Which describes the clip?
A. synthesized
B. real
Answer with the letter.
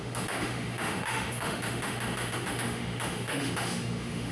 A